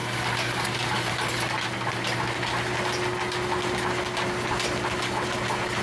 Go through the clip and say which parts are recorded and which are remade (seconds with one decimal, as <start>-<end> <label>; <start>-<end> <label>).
0.0-5.8 recorded